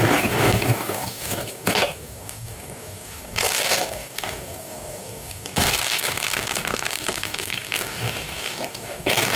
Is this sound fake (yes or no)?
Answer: yes